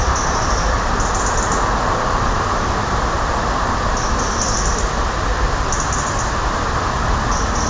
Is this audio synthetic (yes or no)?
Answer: no